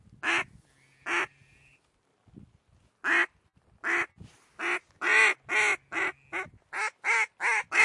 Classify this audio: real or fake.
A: real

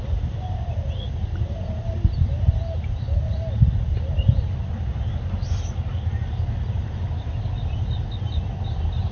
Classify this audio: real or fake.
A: real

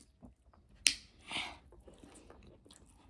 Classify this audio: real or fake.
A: real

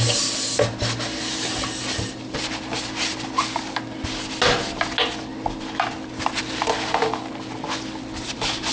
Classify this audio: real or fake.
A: real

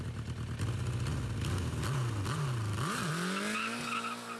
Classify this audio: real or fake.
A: real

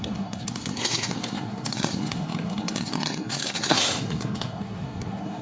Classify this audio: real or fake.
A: fake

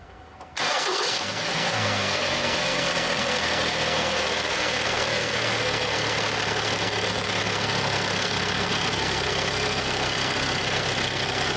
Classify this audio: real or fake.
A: fake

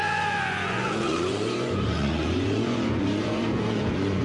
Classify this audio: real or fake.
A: fake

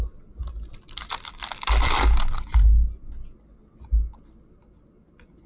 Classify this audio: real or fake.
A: real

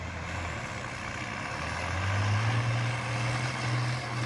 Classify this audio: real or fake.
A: real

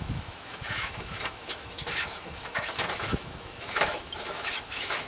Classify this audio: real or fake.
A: fake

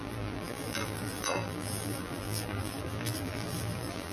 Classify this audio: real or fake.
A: fake